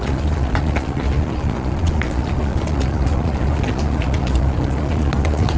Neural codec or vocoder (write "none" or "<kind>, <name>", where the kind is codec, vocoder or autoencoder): vocoder, Vocos